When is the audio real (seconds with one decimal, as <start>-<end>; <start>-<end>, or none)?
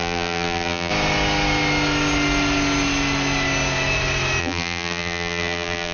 0.9-4.4